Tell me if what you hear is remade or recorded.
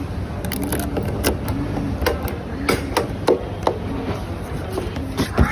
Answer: recorded